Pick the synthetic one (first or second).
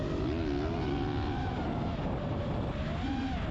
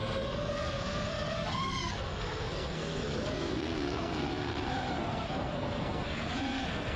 second